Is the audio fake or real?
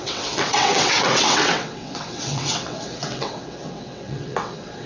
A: fake